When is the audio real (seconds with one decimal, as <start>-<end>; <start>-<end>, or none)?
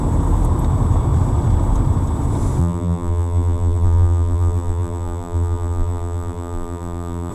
0.0-2.6